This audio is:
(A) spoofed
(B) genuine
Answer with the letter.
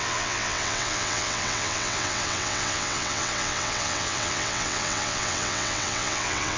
A